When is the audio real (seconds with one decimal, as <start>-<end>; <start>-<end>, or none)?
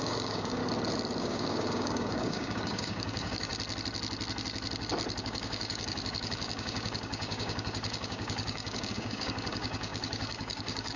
0.6-1.2; 3.5-5.2